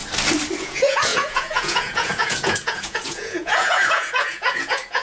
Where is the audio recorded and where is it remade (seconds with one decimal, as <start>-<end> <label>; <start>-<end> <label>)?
0.0-0.6 recorded; 0.6-5.0 remade